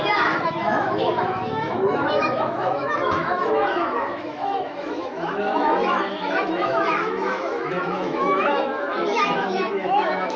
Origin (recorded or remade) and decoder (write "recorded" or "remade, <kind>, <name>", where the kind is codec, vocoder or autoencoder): remade, autoencoder, DAC-VAE